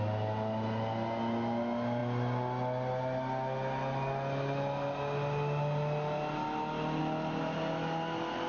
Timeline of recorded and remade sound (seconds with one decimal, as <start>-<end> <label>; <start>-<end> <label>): 0.0-8.5 recorded